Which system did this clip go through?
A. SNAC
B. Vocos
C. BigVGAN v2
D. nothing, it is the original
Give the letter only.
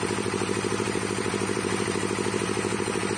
C